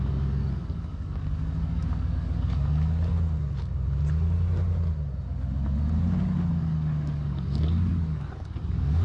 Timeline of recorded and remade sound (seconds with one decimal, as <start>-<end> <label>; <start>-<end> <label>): 0.0-3.1 remade; 3.1-6.5 recorded; 6.5-9.0 remade